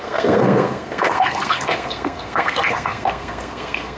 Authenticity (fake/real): fake